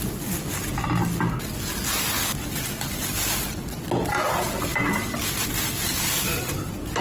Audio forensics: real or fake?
real